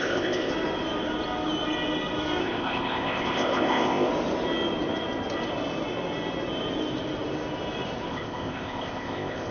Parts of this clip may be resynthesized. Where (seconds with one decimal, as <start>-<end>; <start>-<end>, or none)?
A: 0.0-0.5; 2.4-4.1; 8.1-9.5